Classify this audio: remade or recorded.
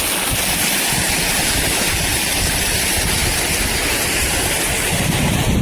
recorded